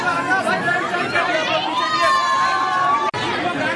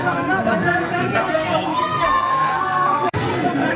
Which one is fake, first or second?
second